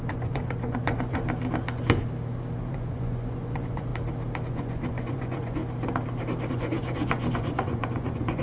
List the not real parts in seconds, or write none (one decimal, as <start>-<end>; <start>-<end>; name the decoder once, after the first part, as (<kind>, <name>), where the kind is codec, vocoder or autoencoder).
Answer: 0.0-1.2 (vocoder, Vocos); 2.7-3.9; 4.5-5.6; 6.5-8.4